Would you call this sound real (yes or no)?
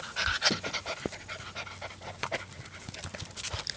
yes